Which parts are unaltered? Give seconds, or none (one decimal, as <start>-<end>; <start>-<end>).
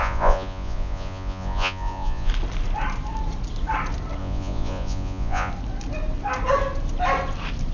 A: 2.3-4.2; 5.5-7.7